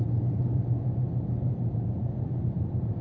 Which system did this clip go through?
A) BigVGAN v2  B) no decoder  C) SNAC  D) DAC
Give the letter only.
A